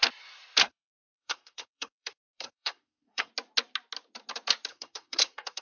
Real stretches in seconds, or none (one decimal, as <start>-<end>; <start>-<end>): 0.0-0.6; 3.3-4.7